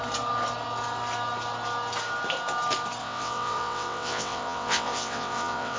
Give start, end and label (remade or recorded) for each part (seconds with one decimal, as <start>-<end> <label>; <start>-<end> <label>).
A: 0.0-3.0 recorded; 3.0-5.8 remade